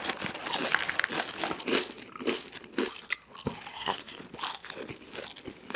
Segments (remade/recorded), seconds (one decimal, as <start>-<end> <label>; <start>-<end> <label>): 0.0-3.7 recorded; 3.7-4.2 remade; 4.2-5.8 recorded

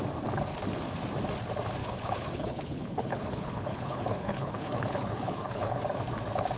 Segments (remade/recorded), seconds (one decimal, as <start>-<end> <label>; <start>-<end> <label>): 0.0-1.8 recorded; 1.8-5.8 remade; 5.8-6.6 recorded

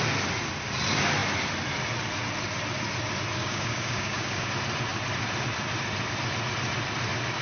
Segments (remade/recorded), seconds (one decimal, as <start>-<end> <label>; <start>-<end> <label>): 0.0-3.4 recorded; 3.4-4.5 remade; 4.5-7.4 recorded

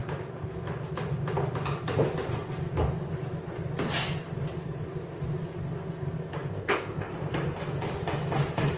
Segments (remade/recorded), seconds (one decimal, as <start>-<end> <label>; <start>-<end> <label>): 0.0-6.5 recorded; 6.5-7.1 remade; 7.1-8.8 recorded

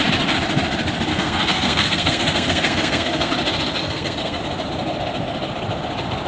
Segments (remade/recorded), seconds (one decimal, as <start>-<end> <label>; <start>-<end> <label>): 0.0-1.1 recorded; 1.1-3.3 remade; 3.3-3.8 recorded; 3.8-4.4 remade; 4.4-6.3 recorded

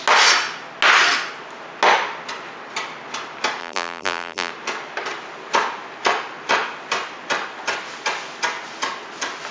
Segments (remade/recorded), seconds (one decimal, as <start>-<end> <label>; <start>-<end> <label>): 0.0-3.6 recorded; 3.6-4.5 remade; 4.5-9.5 recorded

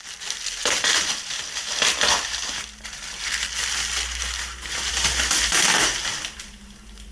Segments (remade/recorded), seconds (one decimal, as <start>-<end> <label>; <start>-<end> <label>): 0.0-7.1 recorded

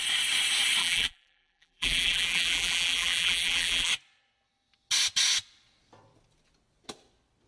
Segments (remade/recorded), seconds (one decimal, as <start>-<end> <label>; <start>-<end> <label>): 0.0-0.8 recorded; 0.8-3.9 remade; 3.9-7.5 recorded